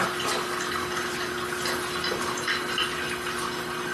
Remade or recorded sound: recorded